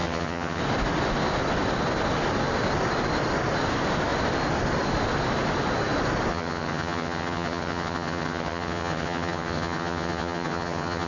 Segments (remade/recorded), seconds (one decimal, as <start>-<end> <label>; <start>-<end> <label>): 0.0-0.6 remade; 0.6-6.3 recorded; 6.3-11.1 remade